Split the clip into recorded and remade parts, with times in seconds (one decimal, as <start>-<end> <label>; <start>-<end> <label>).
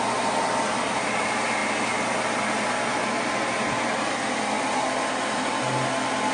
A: 0.0-6.3 recorded